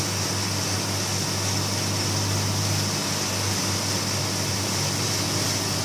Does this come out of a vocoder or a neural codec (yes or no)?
no